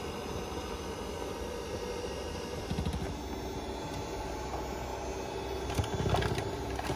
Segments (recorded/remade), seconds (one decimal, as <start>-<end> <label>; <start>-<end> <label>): 0.0-7.0 recorded